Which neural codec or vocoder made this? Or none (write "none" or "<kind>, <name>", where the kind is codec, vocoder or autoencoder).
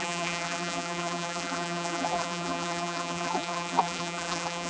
vocoder, BigVGAN v2